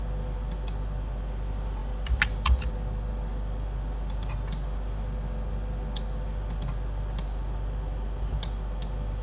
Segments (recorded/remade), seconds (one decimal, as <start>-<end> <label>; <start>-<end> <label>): 0.0-9.2 recorded